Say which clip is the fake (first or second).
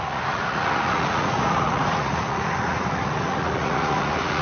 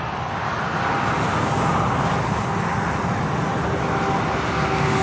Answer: first